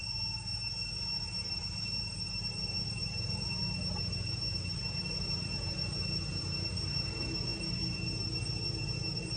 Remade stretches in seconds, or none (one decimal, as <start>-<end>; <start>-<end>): none